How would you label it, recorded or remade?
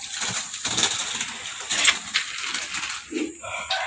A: recorded